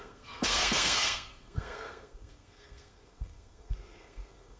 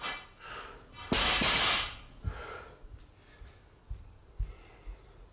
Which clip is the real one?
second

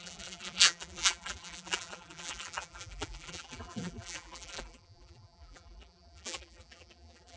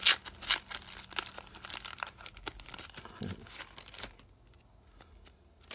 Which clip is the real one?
second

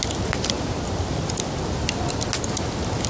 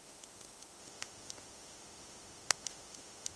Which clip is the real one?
first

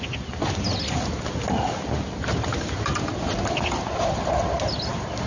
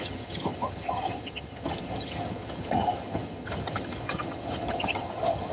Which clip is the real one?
first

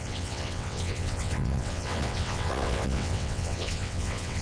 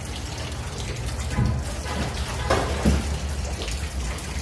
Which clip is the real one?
second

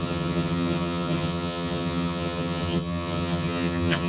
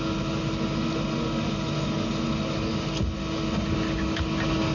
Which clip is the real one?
second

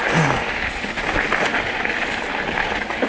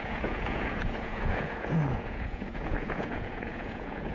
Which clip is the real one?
first